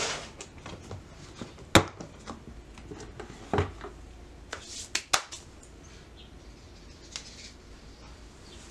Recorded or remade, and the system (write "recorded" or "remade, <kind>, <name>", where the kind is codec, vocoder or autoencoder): recorded